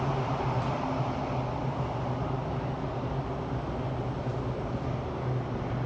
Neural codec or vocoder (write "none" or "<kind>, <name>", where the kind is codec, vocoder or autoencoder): none